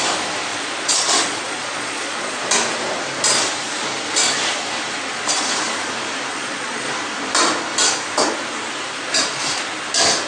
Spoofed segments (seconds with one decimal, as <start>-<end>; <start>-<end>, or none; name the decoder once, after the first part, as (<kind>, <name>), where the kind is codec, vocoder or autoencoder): 0.5-2.4 (vocoder, Vocos); 6.3-6.9

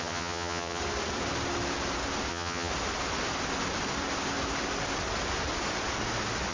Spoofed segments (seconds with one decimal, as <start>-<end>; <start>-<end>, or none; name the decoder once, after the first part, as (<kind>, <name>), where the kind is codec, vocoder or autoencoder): 0.0-0.8 (vocoder, HiFi-GAN); 2.3-2.7

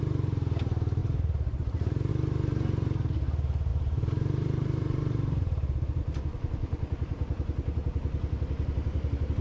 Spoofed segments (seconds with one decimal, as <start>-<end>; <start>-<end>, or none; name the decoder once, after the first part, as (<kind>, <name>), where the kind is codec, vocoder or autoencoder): 1.0-2.1 (vocoder, BigVGAN v2); 3.7-6.0

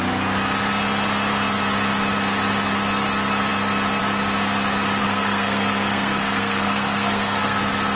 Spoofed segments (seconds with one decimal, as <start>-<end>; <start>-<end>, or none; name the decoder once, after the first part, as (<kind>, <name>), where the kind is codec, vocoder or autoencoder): 5.0-7.6 (codec, SNAC)

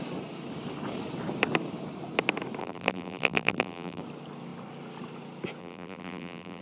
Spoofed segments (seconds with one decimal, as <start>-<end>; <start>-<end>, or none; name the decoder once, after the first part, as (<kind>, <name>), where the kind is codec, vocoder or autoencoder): 2.6-4.0 (vocoder, BigVGAN v2); 5.6-6.6